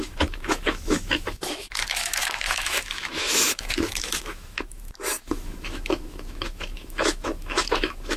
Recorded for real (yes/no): no